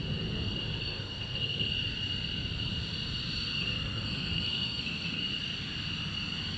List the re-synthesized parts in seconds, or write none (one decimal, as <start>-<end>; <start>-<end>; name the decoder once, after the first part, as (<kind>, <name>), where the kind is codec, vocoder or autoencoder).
0.8-1.7 (codec, SNAC); 3.6-5.2